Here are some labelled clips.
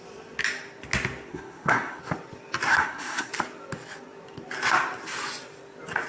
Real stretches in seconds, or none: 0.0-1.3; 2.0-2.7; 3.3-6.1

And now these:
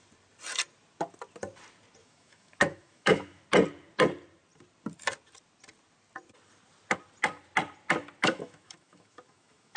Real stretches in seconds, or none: 0.0-2.0; 3.4-8.2

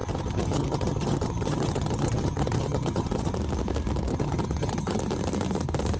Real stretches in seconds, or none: 3.3-4.1; 5.0-6.0

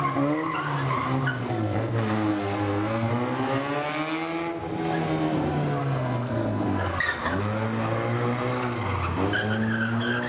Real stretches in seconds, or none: 0.0-1.4; 1.9-2.3; 3.1-5.8; 7.2-10.3

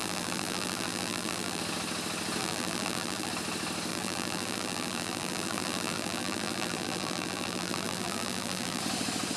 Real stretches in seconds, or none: 1.6-2.4; 3.3-3.9; 8.8-9.4

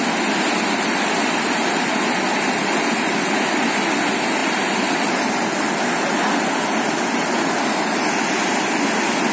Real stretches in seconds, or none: 0.0-9.3

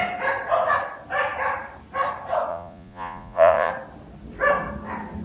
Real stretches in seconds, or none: 0.0-2.5; 3.7-5.2

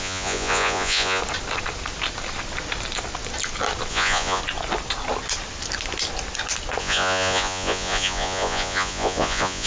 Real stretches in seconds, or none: 1.2-3.9; 4.4-6.8